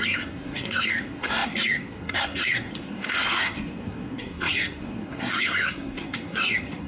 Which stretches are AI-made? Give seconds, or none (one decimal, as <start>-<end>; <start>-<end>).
0.0-6.9